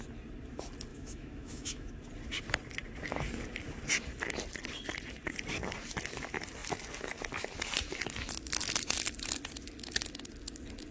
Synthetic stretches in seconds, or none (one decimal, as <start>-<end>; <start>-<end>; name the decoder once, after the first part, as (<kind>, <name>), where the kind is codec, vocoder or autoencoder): 0.9-1.9 (autoencoder, DAC-VAE)